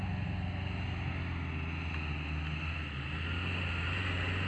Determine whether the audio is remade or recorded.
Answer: recorded